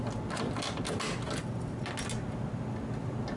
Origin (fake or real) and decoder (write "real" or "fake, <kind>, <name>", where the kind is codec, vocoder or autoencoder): real